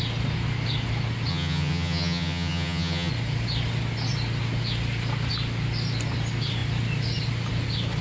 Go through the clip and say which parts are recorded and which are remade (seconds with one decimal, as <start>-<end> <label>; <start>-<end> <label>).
0.0-1.3 recorded; 1.3-3.1 remade; 3.1-8.0 recorded

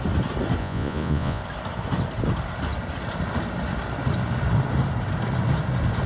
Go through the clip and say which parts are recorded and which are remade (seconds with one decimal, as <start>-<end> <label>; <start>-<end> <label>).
0.0-0.6 recorded; 0.6-1.4 remade; 1.4-6.1 recorded

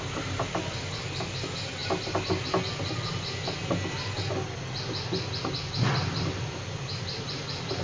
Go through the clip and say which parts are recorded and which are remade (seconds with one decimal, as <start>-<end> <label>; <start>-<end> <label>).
0.0-7.8 recorded

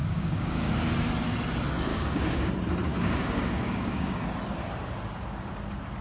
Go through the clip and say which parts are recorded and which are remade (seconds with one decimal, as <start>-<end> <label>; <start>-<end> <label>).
0.0-0.7 remade; 0.7-1.9 recorded; 1.9-2.5 remade; 2.5-2.9 recorded; 2.9-4.2 remade; 4.2-6.0 recorded

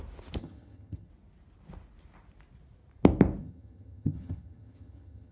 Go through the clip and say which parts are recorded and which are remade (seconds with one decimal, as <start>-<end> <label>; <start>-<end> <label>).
0.0-0.4 recorded; 0.4-1.1 remade; 1.1-3.4 recorded; 3.4-5.3 remade

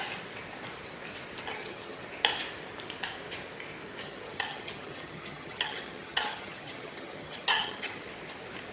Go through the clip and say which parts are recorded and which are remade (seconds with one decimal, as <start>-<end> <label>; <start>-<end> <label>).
0.0-1.5 recorded; 1.5-2.0 remade; 2.0-4.0 recorded; 4.0-8.1 remade; 8.1-8.7 recorded

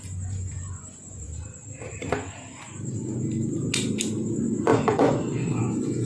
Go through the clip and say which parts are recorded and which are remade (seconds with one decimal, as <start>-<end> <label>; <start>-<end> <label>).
0.0-1.3 remade; 1.3-4.3 recorded; 4.3-6.1 remade

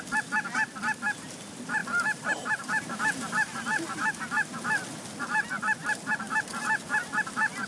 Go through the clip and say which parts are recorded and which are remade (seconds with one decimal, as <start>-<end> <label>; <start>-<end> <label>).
0.0-1.8 recorded; 1.8-4.1 remade; 4.1-7.7 recorded